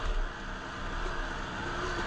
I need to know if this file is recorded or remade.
recorded